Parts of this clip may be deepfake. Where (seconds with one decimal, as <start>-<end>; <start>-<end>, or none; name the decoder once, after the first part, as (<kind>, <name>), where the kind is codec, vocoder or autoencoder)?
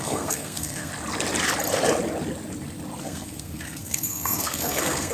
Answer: 0.0-0.9 (codec, SNAC); 3.0-5.1